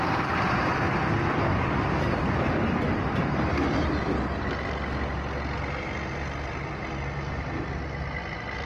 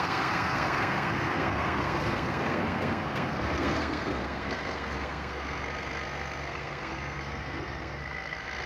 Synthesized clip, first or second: second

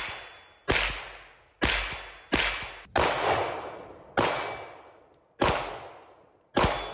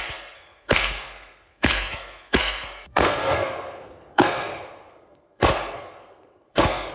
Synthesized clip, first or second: second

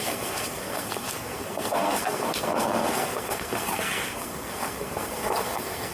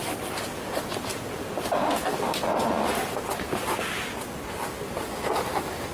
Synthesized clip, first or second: first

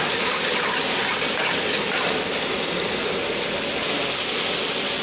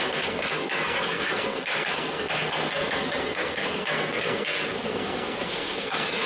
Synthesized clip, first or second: second